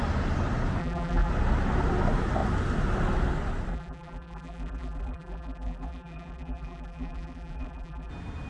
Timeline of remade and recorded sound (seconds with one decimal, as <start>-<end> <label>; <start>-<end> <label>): 0.0-0.8 recorded; 0.8-1.3 remade; 1.3-3.7 recorded; 3.7-8.1 remade; 8.1-8.5 recorded